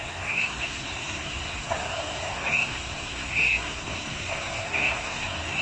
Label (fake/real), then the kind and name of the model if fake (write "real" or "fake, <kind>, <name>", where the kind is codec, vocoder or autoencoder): fake, codec, SNAC